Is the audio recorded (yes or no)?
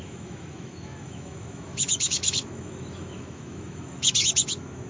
no